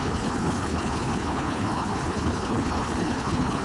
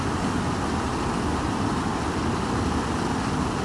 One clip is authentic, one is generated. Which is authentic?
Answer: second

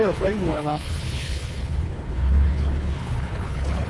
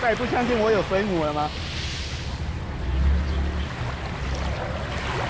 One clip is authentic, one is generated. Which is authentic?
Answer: second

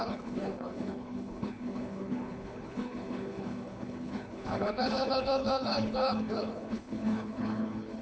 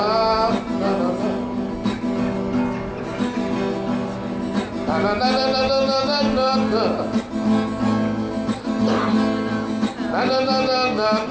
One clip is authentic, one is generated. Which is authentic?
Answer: second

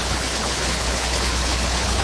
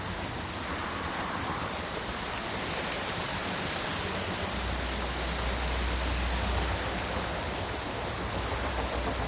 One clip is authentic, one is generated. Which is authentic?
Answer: second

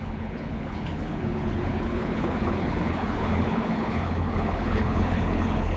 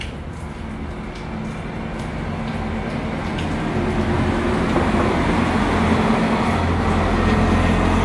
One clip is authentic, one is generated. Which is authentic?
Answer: second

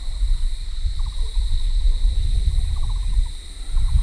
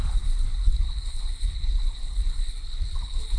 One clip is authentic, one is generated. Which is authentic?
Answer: first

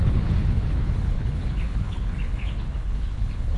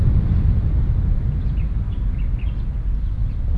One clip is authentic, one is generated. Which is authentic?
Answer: second